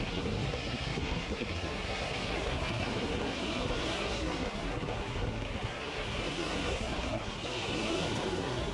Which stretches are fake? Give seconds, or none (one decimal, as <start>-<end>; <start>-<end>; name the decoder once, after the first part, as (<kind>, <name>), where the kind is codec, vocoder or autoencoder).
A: 0.0-8.7 (codec, SNAC)